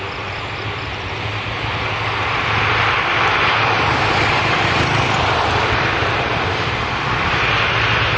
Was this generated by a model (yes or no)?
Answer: no